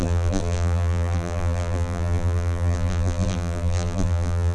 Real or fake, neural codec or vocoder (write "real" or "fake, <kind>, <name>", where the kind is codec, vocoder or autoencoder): fake, vocoder, BigVGAN v2